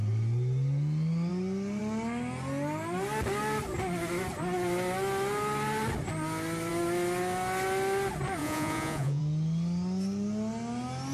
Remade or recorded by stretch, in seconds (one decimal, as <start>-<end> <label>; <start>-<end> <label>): 0.0-8.4 recorded; 8.4-9.2 remade; 9.2-11.1 recorded

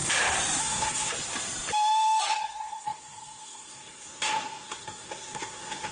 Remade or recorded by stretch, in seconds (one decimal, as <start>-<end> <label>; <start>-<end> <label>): 0.0-0.6 recorded; 0.6-1.1 remade; 1.1-2.2 recorded; 2.2-5.9 remade

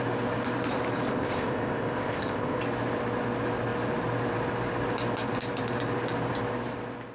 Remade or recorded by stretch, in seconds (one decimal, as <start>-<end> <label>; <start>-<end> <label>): 0.0-1.1 recorded; 1.1-2.6 remade; 2.6-7.1 recorded

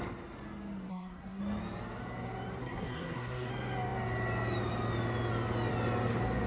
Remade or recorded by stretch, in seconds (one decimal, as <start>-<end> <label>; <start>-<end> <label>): 0.0-0.9 recorded; 0.9-1.4 remade; 1.4-2.6 recorded; 2.6-3.5 remade; 3.5-6.5 recorded

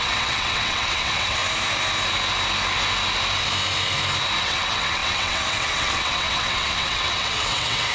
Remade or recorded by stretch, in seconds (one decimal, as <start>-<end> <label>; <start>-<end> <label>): 0.0-1.4 remade; 1.4-4.4 recorded; 4.4-7.9 remade

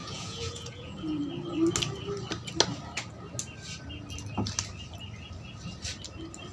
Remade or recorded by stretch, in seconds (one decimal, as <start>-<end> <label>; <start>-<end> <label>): 0.0-1.2 remade; 1.2-6.5 recorded

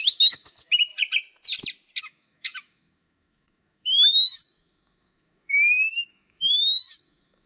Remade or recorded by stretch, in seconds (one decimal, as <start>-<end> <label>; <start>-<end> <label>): 0.0-0.9 remade; 0.9-2.0 recorded; 2.0-7.5 remade